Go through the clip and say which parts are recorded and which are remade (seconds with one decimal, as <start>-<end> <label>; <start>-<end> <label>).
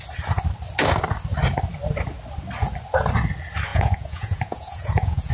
0.0-3.7 recorded; 3.7-5.3 remade